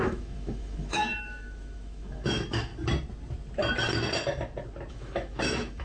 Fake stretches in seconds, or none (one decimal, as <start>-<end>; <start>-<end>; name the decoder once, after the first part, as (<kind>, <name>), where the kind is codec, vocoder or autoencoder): 0.0-2.7 (autoencoder, DAC-VAE); 4.9-5.8